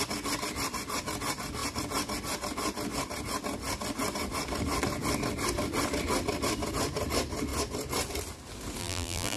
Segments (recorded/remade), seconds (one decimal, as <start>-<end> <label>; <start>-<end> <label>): 0.0-8.8 recorded; 8.8-9.4 remade